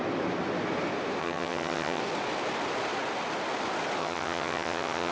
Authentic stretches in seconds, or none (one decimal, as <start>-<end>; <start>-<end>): 0.0-1.2; 2.0-4.0